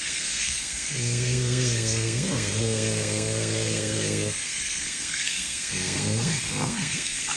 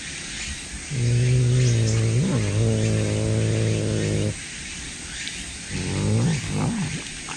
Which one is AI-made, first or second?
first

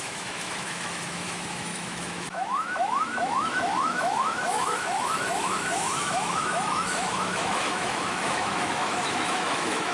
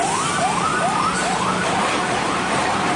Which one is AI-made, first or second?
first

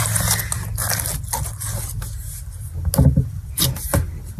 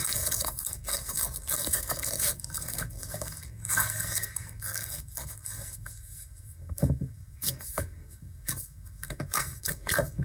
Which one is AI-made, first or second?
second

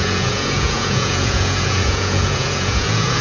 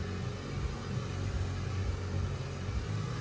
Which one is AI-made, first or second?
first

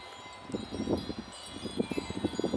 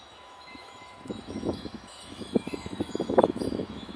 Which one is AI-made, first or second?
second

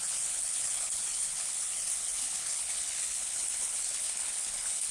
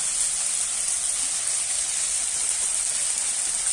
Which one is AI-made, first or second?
first